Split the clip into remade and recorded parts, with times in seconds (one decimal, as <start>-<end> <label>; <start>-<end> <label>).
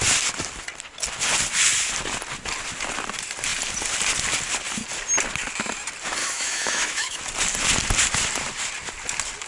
0.0-6.2 recorded; 6.2-7.2 remade; 7.2-9.5 recorded